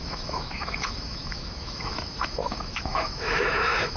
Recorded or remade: remade